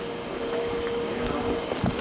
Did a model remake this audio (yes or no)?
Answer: no